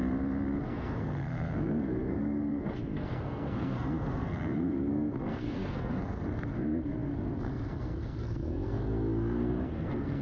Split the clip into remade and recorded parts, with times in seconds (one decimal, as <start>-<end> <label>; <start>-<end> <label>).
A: 0.0-0.6 recorded; 0.6-10.2 remade